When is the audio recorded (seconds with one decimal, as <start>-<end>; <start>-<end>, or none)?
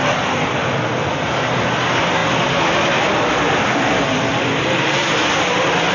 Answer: 2.2-3.0